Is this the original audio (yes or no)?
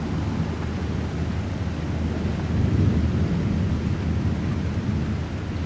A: yes